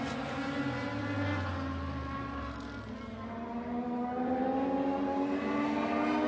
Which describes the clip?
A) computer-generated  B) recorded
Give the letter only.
B